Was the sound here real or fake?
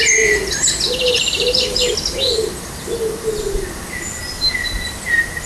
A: real